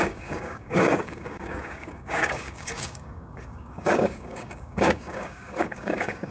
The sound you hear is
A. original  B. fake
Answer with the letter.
B